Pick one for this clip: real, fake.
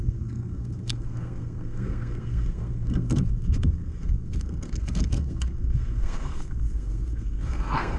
fake